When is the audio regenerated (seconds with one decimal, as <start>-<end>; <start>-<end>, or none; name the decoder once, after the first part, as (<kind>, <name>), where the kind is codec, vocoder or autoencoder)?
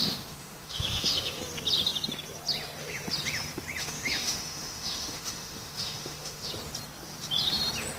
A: 0.0-1.4 (autoencoder, DAC-VAE); 3.8-6.5